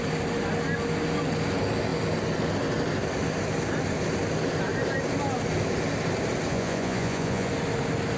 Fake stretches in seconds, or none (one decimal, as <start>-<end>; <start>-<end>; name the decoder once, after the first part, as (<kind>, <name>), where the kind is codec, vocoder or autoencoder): 6.5-7.5 (vocoder, Vocos)